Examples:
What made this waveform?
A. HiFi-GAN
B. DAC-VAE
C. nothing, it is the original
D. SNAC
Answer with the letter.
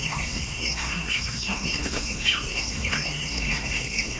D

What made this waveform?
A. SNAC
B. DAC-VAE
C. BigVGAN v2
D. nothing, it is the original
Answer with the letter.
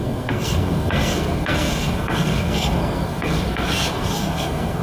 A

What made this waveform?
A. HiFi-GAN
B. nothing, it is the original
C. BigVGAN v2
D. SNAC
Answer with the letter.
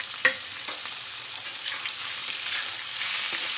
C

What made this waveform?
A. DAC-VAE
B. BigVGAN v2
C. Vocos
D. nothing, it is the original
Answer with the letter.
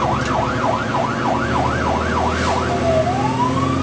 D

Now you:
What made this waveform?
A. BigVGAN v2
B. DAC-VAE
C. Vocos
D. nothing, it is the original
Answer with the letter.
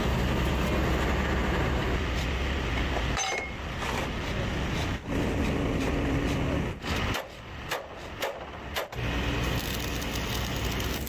D